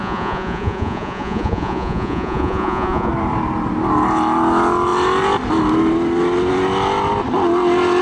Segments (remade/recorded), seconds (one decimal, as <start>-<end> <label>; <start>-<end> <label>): 0.0-3.1 remade; 3.1-8.0 recorded